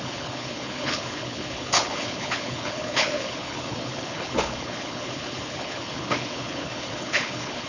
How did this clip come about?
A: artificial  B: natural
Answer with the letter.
A